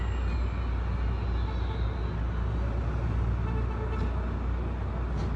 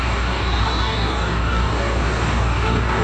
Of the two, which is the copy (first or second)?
second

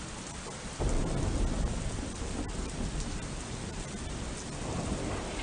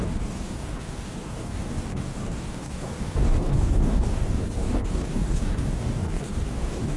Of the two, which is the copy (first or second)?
second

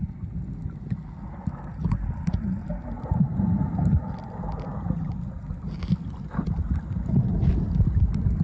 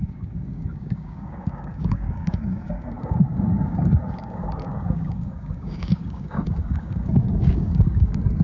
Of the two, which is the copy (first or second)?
second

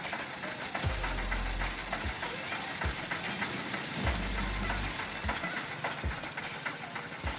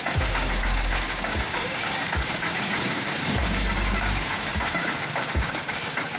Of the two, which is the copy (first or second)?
second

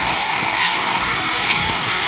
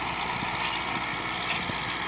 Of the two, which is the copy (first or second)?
first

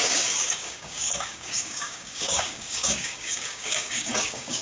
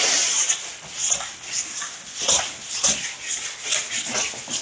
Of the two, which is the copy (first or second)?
first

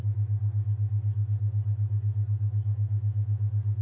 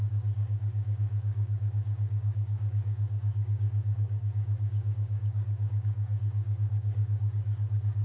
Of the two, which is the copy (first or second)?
second